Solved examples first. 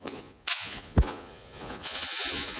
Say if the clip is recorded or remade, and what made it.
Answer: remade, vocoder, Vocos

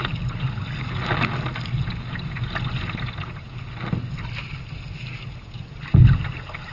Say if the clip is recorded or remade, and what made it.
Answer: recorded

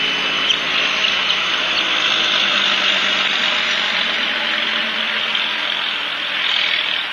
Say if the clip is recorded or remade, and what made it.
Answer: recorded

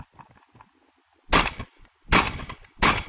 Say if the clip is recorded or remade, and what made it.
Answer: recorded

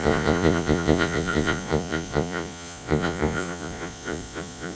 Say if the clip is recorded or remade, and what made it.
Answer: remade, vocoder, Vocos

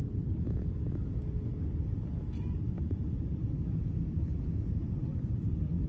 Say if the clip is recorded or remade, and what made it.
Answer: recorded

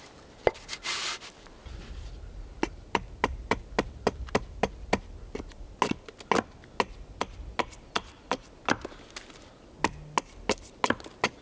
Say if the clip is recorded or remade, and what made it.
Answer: recorded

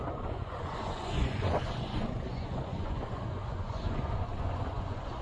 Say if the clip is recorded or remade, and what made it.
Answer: remade, vocoder, Vocos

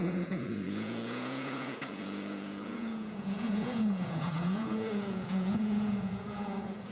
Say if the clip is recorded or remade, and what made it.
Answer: remade, vocoder, Vocos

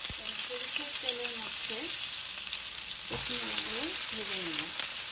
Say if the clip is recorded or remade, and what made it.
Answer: recorded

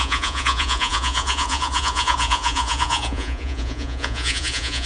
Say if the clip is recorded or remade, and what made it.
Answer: remade, vocoder, Vocos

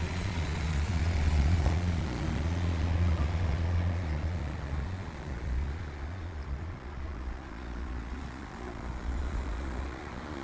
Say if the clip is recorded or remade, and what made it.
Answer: remade, vocoder, Vocos